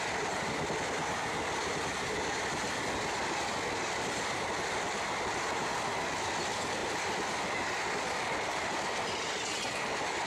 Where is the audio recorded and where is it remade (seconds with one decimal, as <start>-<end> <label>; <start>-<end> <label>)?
0.0-10.3 recorded